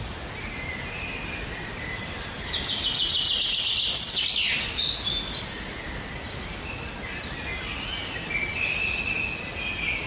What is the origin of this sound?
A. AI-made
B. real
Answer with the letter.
B